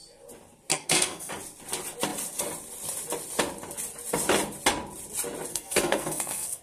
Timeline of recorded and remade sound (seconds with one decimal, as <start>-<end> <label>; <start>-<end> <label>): 0.0-0.7 recorded; 0.7-1.3 remade; 1.3-5.5 recorded; 5.5-6.6 remade